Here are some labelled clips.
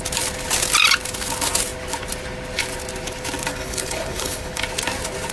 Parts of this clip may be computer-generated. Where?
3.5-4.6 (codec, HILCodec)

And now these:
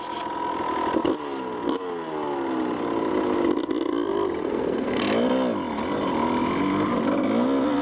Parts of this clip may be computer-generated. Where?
4.4-5.0 (codec, SNAC)